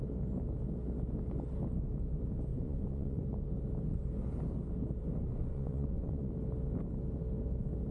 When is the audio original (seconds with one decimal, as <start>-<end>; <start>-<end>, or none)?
0.0-2.5; 3.2-5.3; 6.3-7.9